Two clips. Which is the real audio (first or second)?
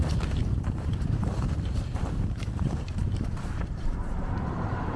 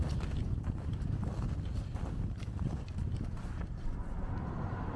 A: second